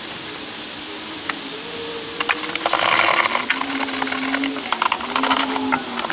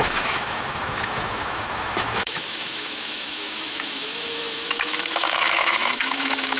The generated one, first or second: second